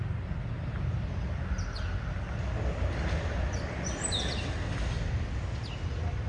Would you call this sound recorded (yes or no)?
yes